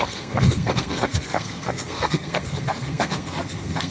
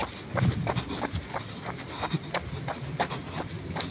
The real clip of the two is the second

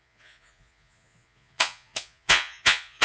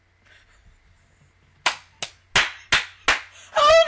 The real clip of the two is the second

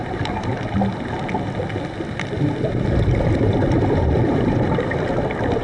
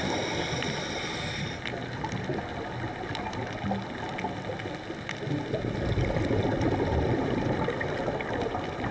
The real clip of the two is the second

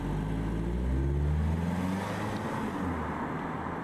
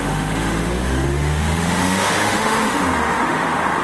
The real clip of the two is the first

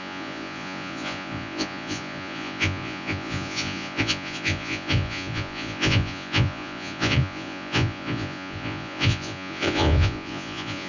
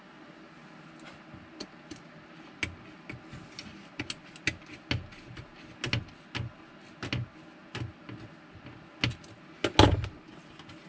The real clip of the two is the second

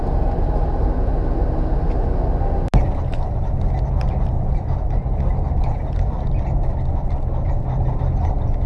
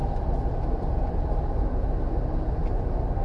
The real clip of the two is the first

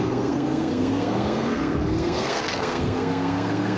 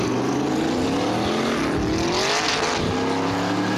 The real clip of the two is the second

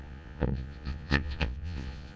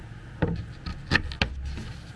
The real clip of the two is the second